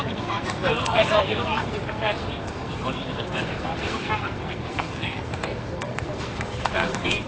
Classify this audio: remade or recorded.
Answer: remade